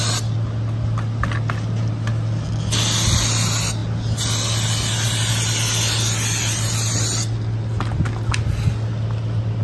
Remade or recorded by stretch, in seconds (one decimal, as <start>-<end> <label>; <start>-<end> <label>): 0.0-9.6 recorded